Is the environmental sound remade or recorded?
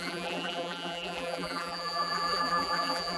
remade